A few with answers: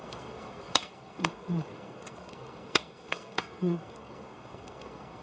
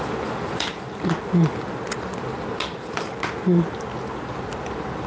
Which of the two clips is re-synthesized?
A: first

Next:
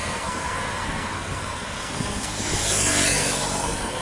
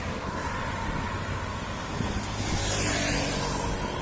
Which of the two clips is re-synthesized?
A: first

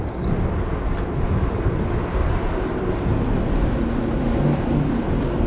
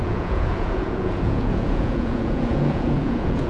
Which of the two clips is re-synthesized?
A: second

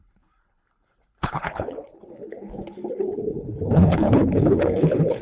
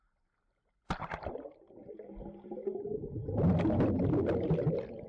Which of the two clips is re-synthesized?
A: first